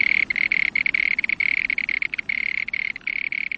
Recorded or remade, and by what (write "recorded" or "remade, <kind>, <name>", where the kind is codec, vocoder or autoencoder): recorded